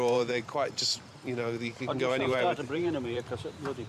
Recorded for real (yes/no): no